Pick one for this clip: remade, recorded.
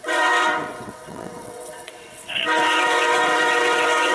remade